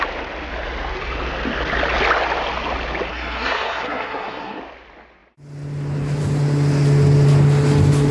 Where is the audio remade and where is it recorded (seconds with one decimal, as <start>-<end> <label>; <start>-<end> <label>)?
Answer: 0.0-3.1 recorded; 3.1-4.6 remade; 4.6-8.1 recorded